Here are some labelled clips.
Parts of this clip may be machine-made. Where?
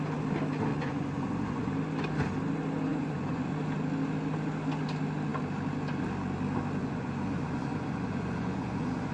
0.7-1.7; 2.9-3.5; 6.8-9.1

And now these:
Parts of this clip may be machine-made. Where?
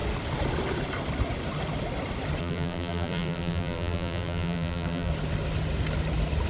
2.4-5.1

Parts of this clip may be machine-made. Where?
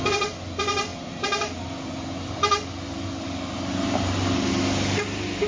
none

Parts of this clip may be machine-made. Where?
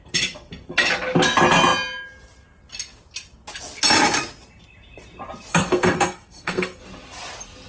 5.5-6.8